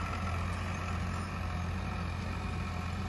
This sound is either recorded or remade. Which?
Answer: recorded